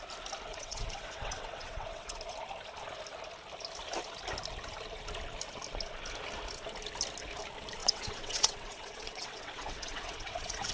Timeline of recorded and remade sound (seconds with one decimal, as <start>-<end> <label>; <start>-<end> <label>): 0.0-0.5 recorded; 0.5-2.2 remade; 2.2-7.8 recorded; 7.8-10.7 remade